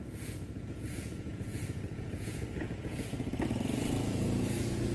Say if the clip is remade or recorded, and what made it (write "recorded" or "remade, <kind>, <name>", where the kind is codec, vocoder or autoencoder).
remade, vocoder, Vocos